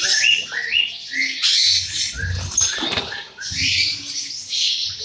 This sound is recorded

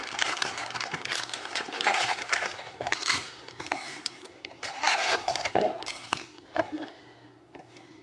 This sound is remade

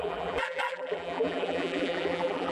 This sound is remade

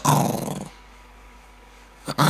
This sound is remade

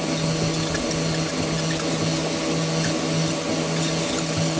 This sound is recorded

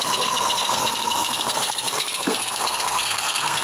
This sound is remade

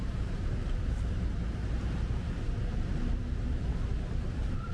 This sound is remade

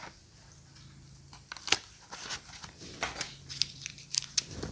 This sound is recorded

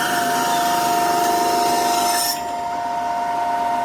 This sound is recorded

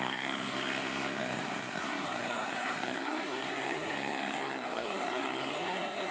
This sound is remade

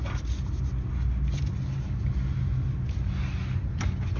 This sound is recorded